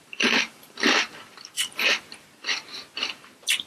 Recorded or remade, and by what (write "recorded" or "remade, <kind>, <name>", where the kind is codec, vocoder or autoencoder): remade, vocoder, BigVGAN v2